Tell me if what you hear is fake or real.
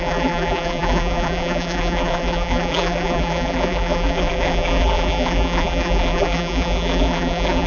fake